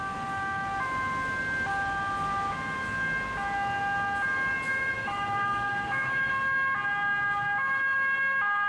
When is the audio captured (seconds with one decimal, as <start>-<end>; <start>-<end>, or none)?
0.0-4.7; 6.3-8.7